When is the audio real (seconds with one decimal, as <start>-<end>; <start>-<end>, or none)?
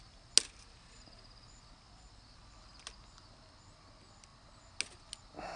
0.0-5.6